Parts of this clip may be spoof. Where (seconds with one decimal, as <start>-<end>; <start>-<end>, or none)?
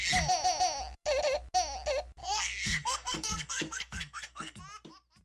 2.2-4.6